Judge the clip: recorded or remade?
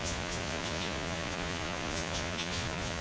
remade